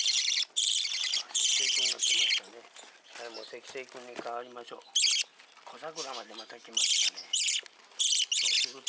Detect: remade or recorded recorded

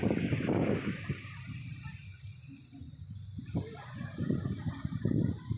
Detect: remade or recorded recorded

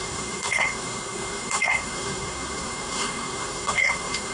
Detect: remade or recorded remade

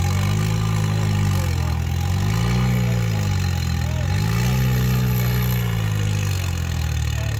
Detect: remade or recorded recorded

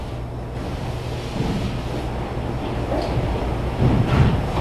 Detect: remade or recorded recorded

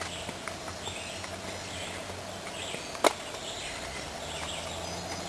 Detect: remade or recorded recorded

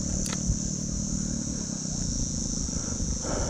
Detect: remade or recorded recorded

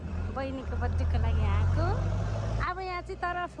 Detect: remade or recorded recorded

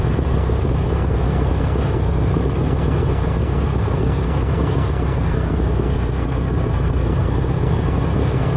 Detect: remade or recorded remade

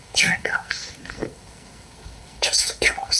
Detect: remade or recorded remade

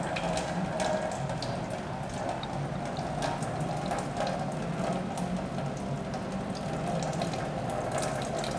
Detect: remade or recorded recorded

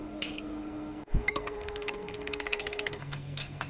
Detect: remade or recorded remade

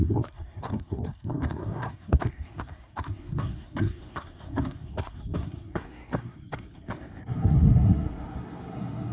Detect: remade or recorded remade